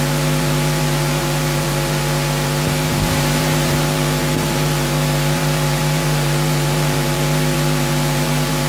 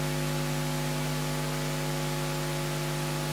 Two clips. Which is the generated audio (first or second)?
first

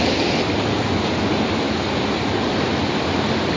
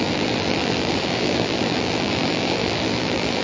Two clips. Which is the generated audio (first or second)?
second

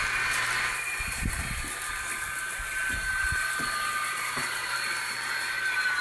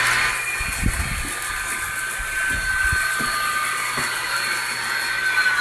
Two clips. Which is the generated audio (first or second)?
first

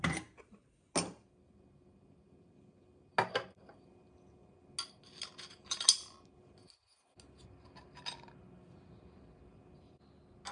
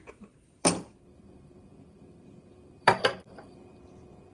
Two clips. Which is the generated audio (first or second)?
second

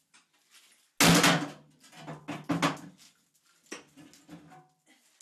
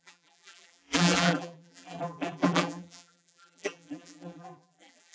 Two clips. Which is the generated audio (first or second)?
second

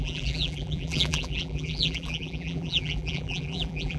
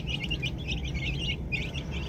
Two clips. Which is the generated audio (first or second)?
first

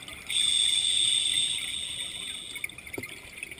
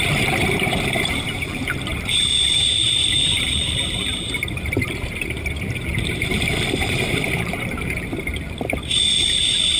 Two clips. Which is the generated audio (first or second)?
second